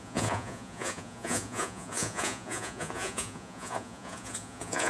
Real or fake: fake